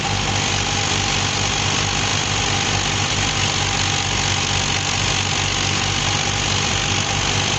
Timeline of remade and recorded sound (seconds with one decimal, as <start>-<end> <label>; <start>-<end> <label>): 0.0-7.6 recorded